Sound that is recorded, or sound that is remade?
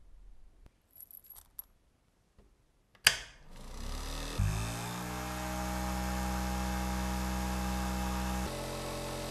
recorded